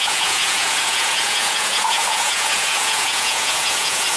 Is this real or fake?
fake